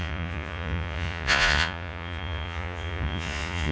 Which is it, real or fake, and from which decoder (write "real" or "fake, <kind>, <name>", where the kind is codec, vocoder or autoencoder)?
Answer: fake, vocoder, Vocos